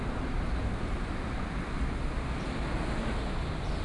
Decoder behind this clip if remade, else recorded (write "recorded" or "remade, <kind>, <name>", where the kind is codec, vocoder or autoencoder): recorded